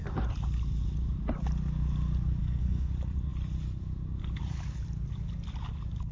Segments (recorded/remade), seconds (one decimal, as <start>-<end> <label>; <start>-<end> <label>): 0.0-2.4 recorded; 2.4-2.9 remade; 2.9-6.1 recorded